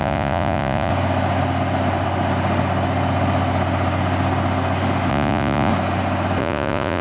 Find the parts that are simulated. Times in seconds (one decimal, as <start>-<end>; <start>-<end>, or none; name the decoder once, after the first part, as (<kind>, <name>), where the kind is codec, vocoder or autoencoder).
0.0-0.9 (vocoder, Vocos); 5.1-5.7; 6.4-7.0

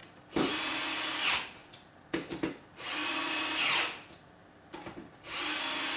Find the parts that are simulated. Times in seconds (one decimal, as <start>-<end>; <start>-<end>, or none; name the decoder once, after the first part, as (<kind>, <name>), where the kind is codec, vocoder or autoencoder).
0.0-0.8 (vocoder, BigVGAN v2); 1.6-5.2

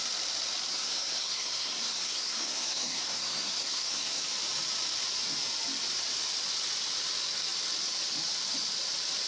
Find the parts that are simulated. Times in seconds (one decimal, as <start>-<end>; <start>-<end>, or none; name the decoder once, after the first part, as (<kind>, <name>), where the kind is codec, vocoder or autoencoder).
0.7-4.2 (codec, SNAC)

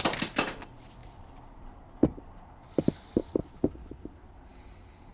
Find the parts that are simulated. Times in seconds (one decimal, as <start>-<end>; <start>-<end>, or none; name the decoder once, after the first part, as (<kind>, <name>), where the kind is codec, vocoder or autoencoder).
1.0-1.6 (vocoder, BigVGAN v2); 2.0-3.4

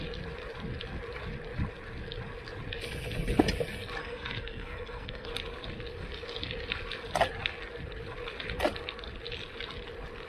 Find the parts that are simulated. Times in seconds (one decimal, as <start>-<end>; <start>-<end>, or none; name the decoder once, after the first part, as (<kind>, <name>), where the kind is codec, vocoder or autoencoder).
4.0-5.3 (codec, SNAC)

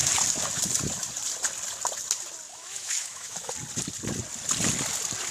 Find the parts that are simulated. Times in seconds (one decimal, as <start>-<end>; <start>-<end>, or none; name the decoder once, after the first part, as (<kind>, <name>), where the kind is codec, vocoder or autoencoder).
2.5-3.5 (autoencoder, DAC-VAE)

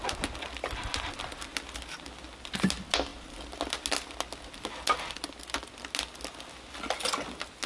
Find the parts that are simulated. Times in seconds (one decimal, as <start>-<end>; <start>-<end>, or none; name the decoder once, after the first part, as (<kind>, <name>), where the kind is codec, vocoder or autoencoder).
none

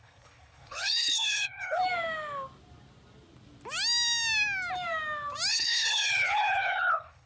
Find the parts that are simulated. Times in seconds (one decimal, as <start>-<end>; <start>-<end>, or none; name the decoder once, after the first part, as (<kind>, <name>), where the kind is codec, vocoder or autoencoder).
0.0-1.8 (codec, HILCodec); 5.5-7.3